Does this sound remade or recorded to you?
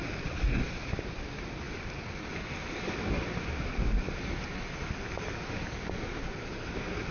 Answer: recorded